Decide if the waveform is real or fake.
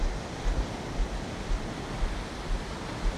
real